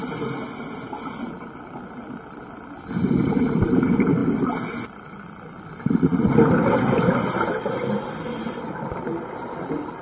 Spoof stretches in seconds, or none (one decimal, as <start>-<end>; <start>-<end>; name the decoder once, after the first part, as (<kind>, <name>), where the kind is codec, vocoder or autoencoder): none